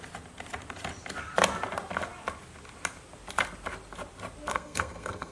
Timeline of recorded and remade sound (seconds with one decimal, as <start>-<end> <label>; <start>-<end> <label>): 0.0-4.5 recorded; 4.5-5.3 remade